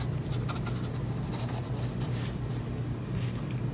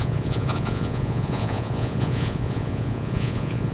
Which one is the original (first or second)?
first